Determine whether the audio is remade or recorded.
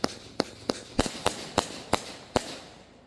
remade